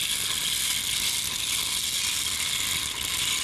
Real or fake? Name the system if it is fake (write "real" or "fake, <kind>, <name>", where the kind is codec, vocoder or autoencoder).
real